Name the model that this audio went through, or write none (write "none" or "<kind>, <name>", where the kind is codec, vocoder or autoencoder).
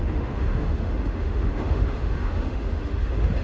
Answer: autoencoder, DAC-VAE